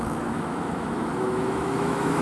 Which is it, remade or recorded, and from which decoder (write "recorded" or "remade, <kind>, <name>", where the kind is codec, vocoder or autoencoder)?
remade, autoencoder, DAC-VAE